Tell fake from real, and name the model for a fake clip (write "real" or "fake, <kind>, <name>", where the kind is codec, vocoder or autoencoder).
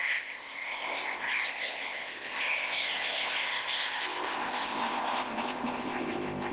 fake, codec, ZipCodec